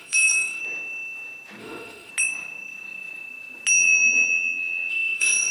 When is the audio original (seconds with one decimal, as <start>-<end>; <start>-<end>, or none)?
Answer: 0.6-1.6; 2.1-4.9